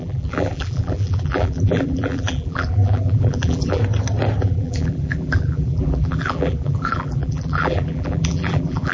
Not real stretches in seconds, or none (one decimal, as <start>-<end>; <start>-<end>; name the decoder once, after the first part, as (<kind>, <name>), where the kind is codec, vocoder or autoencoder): 0.0-3.8 (vocoder, BigVGAN v2); 4.4-8.9